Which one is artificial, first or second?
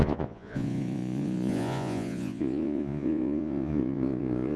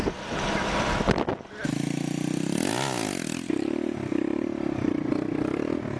first